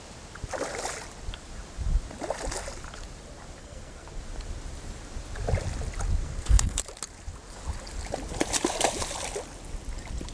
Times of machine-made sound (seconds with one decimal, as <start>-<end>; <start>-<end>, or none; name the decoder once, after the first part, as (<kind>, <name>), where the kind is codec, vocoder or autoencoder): 3.6-4.2 (codec, SNAC); 6.2-6.8